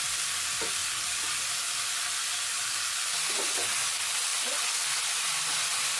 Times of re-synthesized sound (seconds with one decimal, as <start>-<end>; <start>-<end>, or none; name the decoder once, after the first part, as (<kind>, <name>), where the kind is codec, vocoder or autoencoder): none